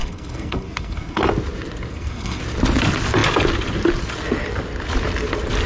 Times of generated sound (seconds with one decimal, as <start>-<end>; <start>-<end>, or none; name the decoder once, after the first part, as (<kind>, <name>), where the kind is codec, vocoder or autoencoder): 0.0-1.2 (codec, SNAC); 1.9-2.4